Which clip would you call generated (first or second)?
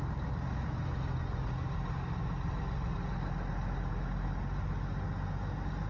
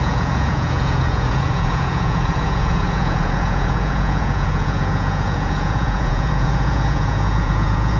second